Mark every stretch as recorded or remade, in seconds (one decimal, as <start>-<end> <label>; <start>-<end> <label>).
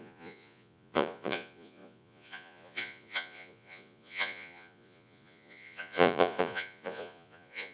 0.0-7.7 remade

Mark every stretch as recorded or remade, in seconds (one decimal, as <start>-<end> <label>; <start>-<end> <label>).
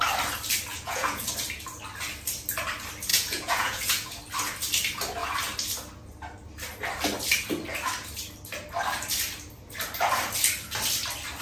0.0-0.7 recorded; 0.7-1.3 remade; 1.3-3.1 recorded; 3.1-4.1 remade; 4.1-11.4 recorded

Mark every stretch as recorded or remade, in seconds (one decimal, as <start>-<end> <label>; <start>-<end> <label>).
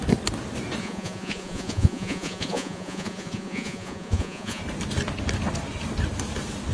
0.0-0.8 recorded; 0.8-4.6 remade; 4.6-6.7 recorded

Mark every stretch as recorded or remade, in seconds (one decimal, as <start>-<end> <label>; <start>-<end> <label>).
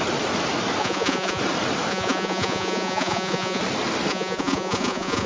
0.0-0.8 recorded; 0.8-1.4 remade; 1.4-1.9 recorded; 1.9-3.6 remade; 3.6-4.1 recorded; 4.1-5.3 remade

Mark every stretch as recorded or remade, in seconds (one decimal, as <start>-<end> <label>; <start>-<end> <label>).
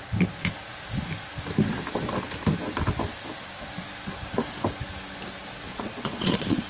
0.0-5.7 recorded; 5.7-6.7 remade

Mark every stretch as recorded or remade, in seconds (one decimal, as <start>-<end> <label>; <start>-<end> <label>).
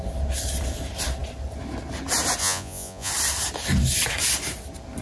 0.0-2.4 recorded; 2.4-3.1 remade; 3.1-5.0 recorded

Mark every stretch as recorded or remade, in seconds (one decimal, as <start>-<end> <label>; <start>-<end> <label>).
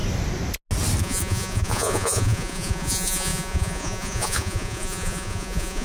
0.0-1.0 recorded; 1.0-5.8 remade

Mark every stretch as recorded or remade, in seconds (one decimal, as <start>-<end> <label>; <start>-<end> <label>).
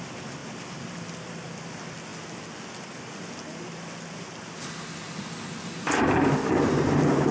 0.0-7.3 recorded